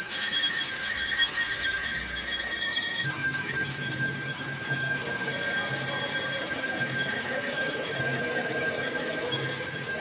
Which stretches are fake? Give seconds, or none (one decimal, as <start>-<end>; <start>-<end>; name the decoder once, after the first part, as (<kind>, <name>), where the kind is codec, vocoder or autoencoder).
0.0-5.3 (autoencoder, DAC-VAE); 6.4-10.0